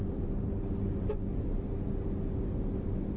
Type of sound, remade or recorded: recorded